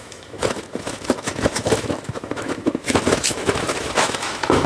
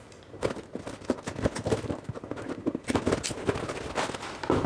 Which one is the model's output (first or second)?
first